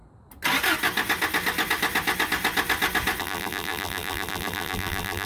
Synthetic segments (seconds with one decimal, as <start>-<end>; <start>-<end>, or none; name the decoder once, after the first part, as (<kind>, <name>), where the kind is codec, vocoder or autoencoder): 3.2-5.3 (vocoder, BigVGAN v2)